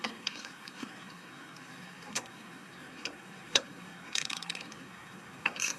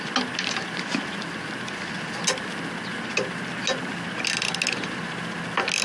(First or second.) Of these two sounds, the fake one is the first